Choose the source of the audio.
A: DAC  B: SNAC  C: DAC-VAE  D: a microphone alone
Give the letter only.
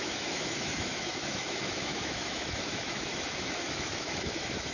C